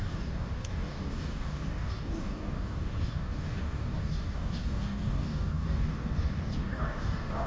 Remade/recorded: remade